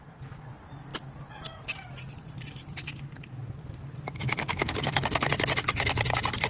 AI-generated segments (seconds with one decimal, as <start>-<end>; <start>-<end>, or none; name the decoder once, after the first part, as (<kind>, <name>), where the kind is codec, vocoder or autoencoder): 4.4-5.3 (codec, SNAC)

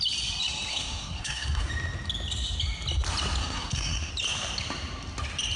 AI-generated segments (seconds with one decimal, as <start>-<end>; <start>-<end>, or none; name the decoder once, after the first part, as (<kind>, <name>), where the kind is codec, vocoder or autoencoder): 0.7-1.7 (codec, SNAC); 3.4-4.1

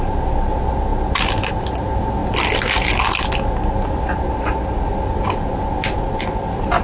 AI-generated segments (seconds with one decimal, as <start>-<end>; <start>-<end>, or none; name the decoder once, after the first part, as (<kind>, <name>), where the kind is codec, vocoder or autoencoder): none

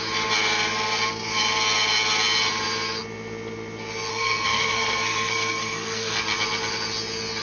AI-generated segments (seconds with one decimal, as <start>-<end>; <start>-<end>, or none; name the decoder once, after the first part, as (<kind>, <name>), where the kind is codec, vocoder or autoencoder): 4.1-6.2 (codec, SNAC)

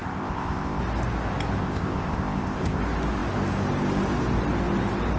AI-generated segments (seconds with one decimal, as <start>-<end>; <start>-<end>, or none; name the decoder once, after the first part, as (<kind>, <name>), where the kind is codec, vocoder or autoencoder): 0.0-0.8 (codec, ZipCodec); 1.6-2.8

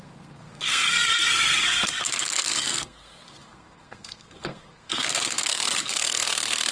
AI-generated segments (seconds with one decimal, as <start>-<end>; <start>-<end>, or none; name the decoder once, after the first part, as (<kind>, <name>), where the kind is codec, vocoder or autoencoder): 0.0-6.7 (codec, SNAC)

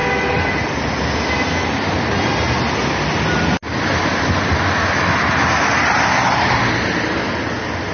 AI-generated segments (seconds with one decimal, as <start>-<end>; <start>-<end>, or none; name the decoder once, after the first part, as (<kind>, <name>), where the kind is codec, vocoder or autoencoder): none